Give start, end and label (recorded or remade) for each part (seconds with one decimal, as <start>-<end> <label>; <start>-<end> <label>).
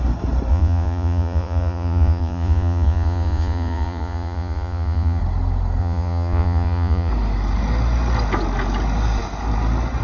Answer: 0.0-0.5 recorded; 0.5-5.2 remade; 5.2-5.8 recorded; 5.8-7.1 remade; 7.1-10.0 recorded